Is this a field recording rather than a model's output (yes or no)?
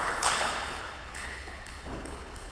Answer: no